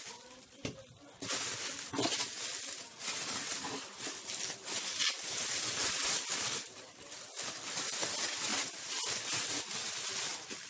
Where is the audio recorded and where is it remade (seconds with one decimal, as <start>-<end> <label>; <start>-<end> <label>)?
0.0-8.5 recorded; 8.5-9.1 remade; 9.1-10.7 recorded